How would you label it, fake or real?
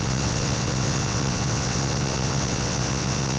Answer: fake